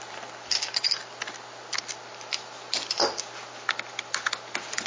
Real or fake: real